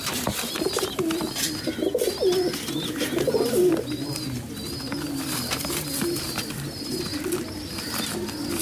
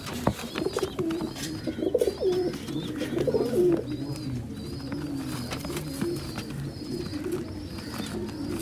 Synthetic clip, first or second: first